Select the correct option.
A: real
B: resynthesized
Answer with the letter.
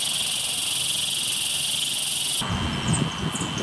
A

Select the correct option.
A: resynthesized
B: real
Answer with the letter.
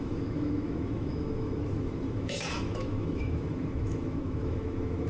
A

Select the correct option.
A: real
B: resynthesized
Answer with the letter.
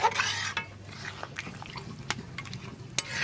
A